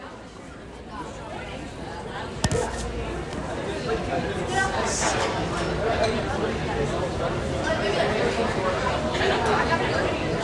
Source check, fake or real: real